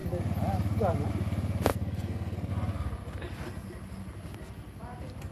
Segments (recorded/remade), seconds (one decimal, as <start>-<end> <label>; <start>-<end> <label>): 0.0-1.7 recorded; 1.7-2.5 remade; 2.5-5.3 recorded